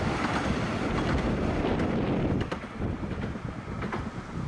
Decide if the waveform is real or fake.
real